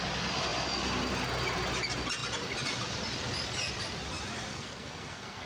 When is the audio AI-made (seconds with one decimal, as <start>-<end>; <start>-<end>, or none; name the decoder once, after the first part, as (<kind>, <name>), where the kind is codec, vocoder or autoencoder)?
4.5-5.5 (codec, SNAC)